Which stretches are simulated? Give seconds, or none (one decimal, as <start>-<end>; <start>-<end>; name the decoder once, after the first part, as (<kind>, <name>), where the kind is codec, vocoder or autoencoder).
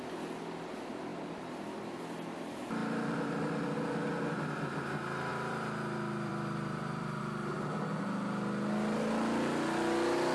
1.1-1.8 (vocoder, BigVGAN v2); 2.8-3.9; 5.3-7.2